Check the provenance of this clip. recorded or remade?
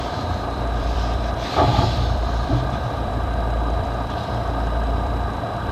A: remade